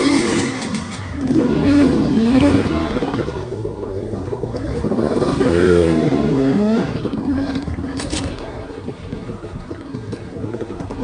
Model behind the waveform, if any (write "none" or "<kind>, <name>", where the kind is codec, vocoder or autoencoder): codec, SNAC